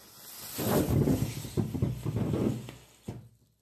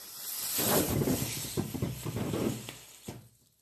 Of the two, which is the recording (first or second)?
first